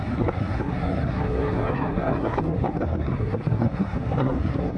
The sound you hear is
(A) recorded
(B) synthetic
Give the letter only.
B